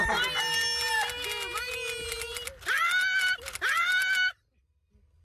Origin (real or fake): real